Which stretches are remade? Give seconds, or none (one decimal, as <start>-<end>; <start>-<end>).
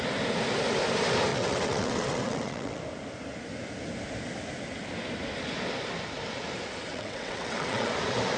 1.3-2.8; 6.9-7.9